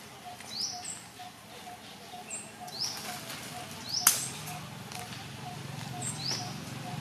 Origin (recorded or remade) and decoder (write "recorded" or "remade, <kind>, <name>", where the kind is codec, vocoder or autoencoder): recorded